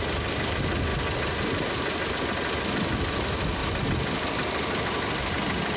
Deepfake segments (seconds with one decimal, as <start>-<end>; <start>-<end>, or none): none